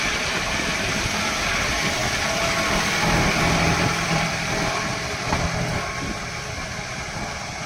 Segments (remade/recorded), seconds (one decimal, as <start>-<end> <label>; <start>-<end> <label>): 0.0-4.9 remade; 4.9-7.3 recorded; 7.3-7.7 remade